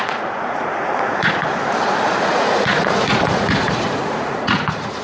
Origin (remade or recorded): remade